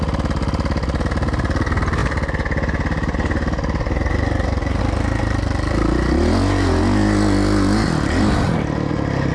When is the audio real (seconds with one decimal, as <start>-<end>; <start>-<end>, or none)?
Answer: 0.0-9.3

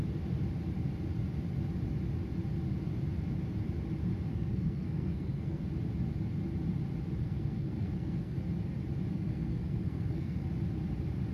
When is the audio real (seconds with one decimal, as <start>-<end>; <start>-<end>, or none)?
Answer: 0.0-4.3; 5.6-7.2; 8.4-9.1; 10.5-11.3

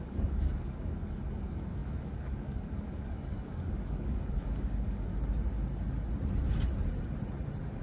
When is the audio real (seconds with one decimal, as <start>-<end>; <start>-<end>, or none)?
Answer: 5.1-7.8

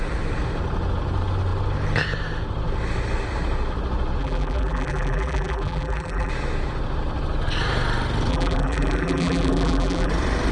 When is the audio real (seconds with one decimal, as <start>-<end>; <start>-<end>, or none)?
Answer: 0.0-4.2; 6.3-8.3; 10.1-10.5

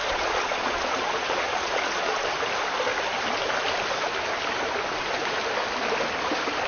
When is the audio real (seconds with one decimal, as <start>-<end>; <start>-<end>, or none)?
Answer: 2.2-6.7

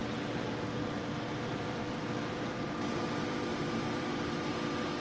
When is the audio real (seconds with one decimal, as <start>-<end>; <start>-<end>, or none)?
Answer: 3.0-3.5; 4.5-5.0

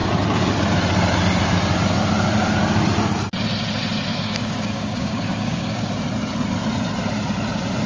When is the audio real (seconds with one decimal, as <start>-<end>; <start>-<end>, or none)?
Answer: 0.0-4.1; 5.9-7.9